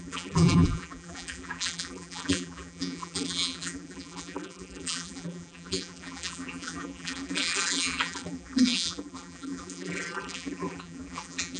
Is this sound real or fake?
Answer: fake